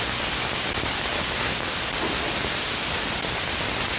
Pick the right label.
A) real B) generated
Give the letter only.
A